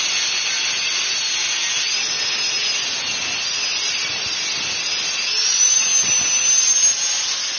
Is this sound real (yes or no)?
yes